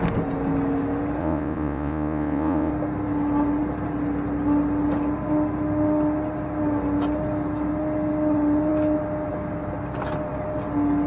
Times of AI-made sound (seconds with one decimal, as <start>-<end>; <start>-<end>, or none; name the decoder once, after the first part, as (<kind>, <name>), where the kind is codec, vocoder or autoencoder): 1.2-2.7 (vocoder, Vocos)